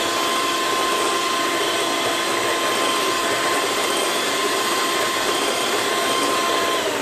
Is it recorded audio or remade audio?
recorded